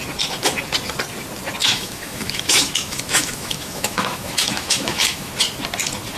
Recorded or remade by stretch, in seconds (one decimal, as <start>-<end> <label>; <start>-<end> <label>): 0.0-1.6 recorded; 1.6-5.3 remade; 5.3-6.2 recorded